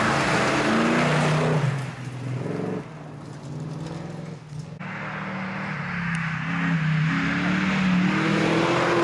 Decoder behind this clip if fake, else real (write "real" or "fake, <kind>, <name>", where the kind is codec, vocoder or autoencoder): real